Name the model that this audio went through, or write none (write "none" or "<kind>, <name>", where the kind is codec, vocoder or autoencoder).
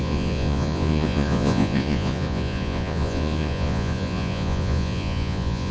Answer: vocoder, Vocos